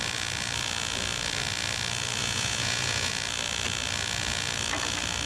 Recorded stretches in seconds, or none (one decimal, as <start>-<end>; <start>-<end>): 0.0-2.2; 3.1-5.3